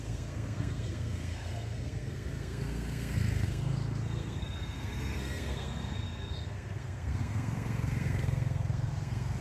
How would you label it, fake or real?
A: fake